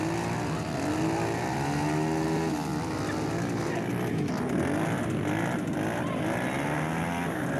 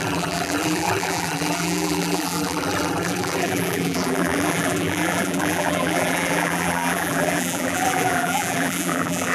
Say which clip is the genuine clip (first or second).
first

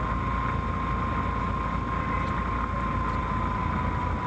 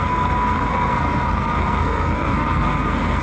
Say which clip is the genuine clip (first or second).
first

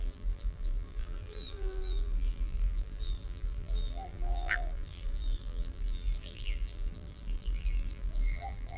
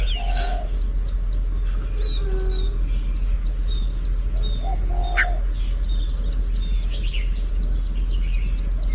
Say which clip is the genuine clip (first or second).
second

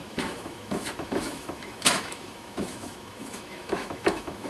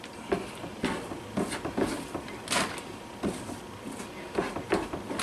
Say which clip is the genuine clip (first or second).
second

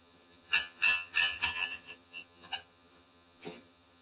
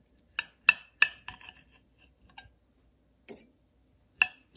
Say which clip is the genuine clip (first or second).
second